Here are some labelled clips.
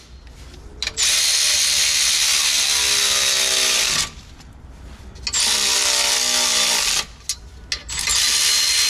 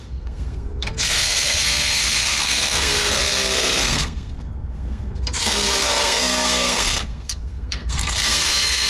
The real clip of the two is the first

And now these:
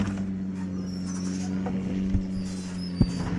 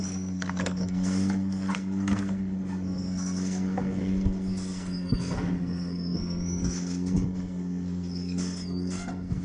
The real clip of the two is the first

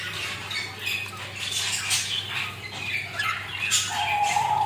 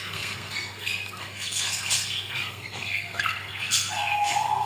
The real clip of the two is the first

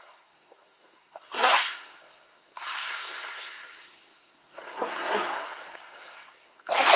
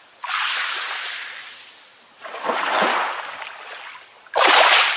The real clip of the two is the second